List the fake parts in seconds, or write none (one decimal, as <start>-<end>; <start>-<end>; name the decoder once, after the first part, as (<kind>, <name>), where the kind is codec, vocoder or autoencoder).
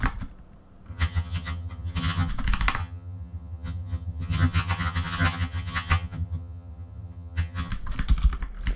0.9-2.3 (vocoder, HiFi-GAN); 2.8-7.7